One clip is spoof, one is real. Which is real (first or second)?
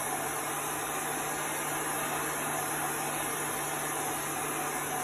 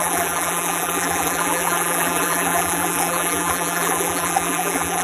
first